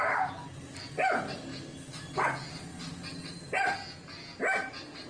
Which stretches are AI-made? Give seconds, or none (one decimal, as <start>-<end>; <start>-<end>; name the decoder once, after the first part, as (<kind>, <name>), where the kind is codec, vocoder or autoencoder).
none